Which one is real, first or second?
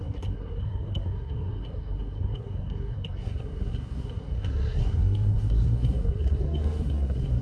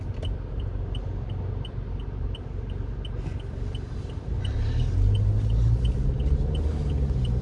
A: second